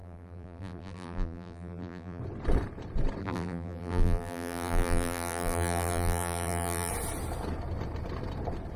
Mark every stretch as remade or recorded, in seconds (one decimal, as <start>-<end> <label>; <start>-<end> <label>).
0.0-2.2 remade; 2.2-3.2 recorded; 3.2-6.9 remade; 6.9-8.8 recorded